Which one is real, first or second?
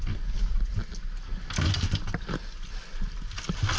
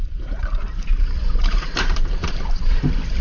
first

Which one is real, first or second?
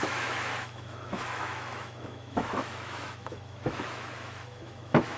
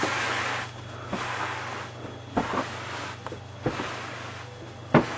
second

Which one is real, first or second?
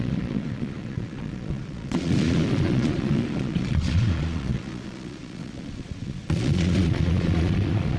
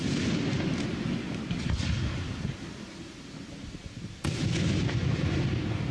second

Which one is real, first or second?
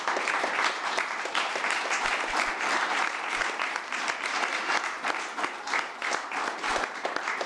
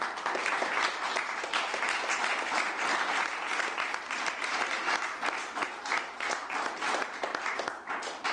second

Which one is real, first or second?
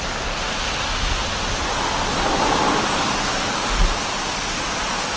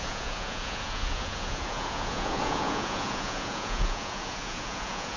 first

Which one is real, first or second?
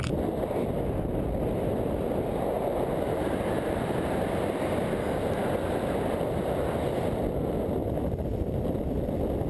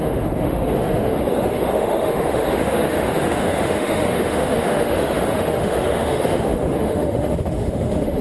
first